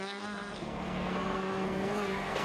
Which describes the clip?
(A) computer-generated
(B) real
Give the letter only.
A